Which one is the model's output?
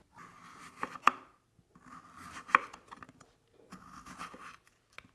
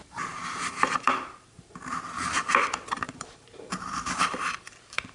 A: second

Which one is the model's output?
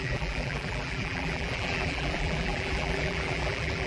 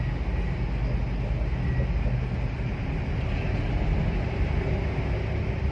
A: first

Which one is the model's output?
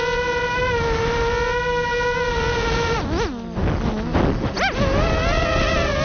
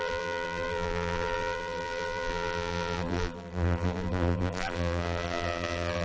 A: second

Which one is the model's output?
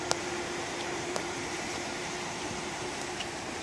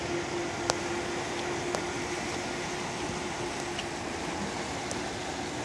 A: first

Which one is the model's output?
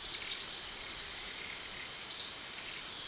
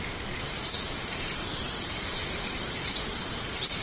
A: second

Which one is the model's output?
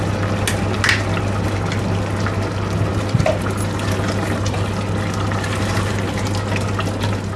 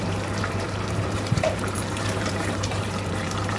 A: second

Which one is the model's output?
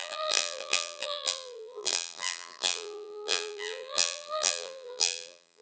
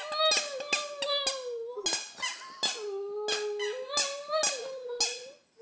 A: first